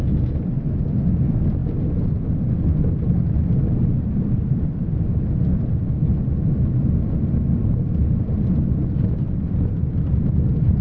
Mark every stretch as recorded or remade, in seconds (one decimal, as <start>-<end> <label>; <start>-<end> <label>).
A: 0.0-10.8 recorded